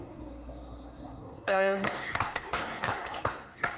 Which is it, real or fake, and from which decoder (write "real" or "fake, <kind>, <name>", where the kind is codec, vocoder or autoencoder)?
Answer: fake, codec, SNAC